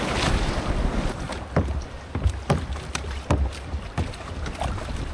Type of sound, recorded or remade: recorded